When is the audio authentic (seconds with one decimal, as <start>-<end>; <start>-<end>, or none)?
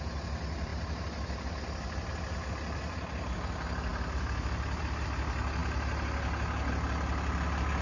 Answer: 0.0-7.8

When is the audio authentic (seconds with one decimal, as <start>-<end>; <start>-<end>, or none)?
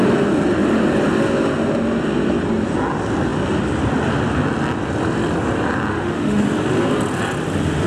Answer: 0.0-5.9; 6.4-7.9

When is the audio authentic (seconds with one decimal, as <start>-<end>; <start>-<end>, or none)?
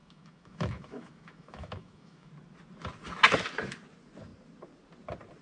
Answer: 2.3-5.4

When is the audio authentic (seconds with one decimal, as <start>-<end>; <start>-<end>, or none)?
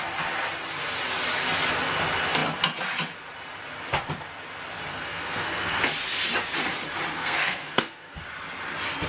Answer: 0.0-4.9; 5.8-7.1; 8.2-9.1